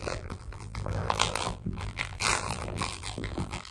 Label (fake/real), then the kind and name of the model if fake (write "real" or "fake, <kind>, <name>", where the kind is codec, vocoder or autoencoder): fake, vocoder, BigVGAN v2